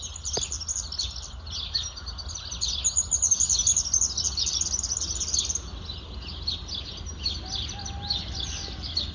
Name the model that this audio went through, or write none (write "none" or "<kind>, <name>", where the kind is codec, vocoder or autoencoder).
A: none